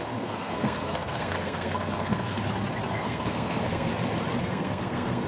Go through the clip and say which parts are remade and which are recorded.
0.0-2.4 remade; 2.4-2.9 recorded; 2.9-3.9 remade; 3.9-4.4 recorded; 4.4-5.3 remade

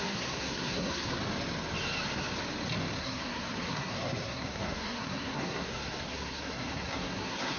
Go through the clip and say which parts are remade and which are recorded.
0.0-1.2 remade; 1.2-3.0 recorded; 3.0-7.6 remade

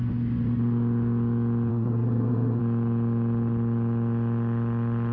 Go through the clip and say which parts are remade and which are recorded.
0.0-1.7 recorded; 1.7-2.6 remade; 2.6-5.1 recorded